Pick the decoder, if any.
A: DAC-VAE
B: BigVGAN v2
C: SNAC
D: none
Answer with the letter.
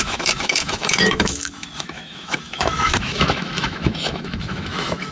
A